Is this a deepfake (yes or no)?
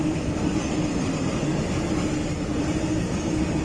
no